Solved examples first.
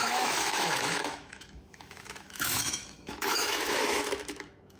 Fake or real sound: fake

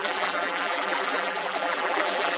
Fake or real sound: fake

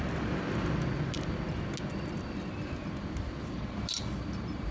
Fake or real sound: real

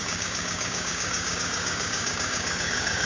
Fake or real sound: fake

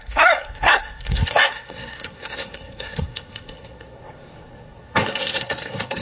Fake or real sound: fake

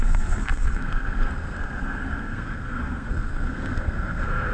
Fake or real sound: fake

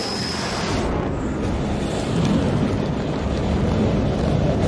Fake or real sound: real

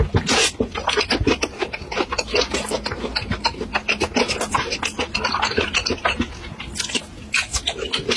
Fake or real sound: real